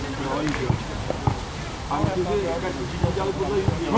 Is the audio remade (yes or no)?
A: no